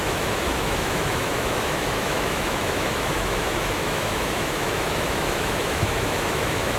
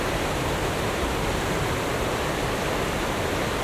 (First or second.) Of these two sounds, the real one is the second